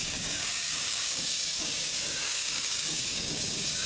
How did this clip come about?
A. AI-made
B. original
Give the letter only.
A